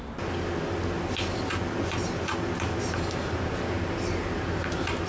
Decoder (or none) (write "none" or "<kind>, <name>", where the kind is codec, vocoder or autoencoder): none